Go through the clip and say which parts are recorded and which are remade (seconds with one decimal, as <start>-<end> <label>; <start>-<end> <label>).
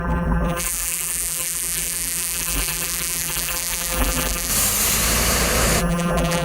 0.0-4.5 remade; 4.5-5.8 recorded; 5.8-6.4 remade